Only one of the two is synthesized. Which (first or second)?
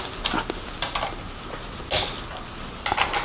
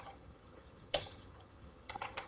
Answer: second